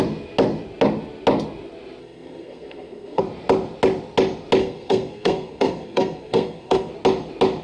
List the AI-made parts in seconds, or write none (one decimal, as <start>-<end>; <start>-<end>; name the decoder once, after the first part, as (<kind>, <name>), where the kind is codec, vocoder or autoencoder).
2.0-3.2 (codec, SNAC); 4.6-6.9